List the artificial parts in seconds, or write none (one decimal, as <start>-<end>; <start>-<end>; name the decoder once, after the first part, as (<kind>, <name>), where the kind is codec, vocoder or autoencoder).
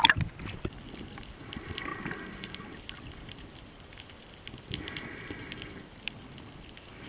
none